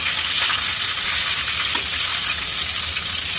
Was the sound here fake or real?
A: real